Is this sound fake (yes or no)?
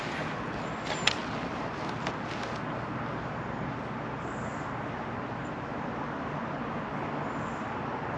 no